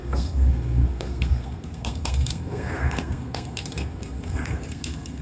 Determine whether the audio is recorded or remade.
remade